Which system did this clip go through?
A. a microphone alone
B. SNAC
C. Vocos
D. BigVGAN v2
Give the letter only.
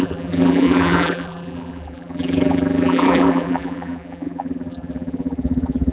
D